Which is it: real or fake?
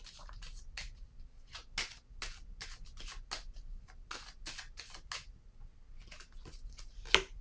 real